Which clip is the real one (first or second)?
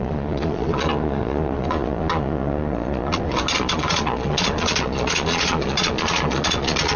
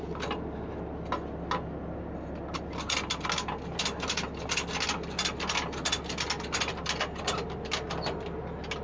second